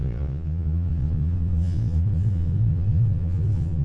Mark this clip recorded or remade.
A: remade